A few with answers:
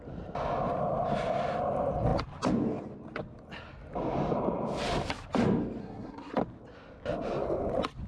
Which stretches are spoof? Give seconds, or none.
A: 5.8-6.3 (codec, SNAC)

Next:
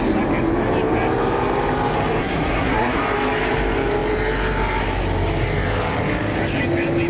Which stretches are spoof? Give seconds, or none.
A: 2.2-3.0 (codec, SNAC)

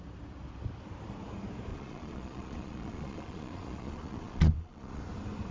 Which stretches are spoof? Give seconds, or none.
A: 1.7-5.0 (vocoder, Vocos)

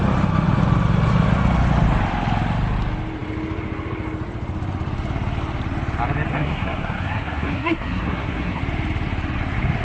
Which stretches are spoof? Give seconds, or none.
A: 6.3-8.6 (codec, SNAC)